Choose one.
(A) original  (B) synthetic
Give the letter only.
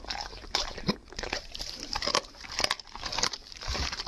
B